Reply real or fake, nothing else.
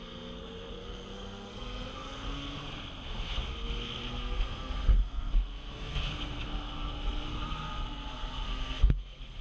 fake